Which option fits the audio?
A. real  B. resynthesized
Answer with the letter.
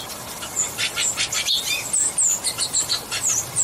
A